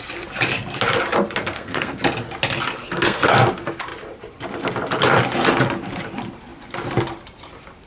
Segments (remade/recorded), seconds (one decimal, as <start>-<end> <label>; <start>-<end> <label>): 0.0-1.4 recorded; 1.4-2.0 remade; 2.0-2.8 recorded; 2.8-3.5 remade; 3.5-7.9 recorded